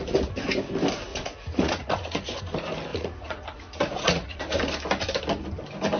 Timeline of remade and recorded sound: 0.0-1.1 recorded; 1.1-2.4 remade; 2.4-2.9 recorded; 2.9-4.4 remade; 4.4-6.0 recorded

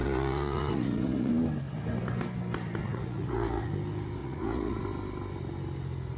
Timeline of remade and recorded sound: 0.0-1.3 remade; 1.3-2.8 recorded; 2.8-3.7 remade; 3.7-4.2 recorded; 4.2-4.8 remade; 4.8-6.2 recorded

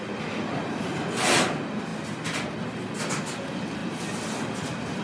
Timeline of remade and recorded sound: 0.0-5.0 recorded

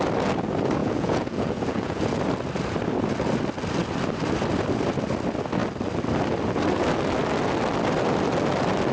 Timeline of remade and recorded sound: 0.0-0.8 recorded; 0.8-2.0 remade; 2.0-8.9 recorded

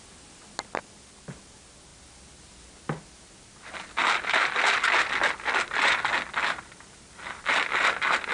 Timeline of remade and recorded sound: 0.0-8.3 recorded

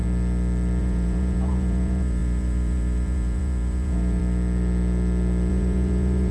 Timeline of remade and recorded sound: 0.0-0.8 recorded; 0.8-4.2 remade; 4.2-5.5 recorded; 5.5-6.3 remade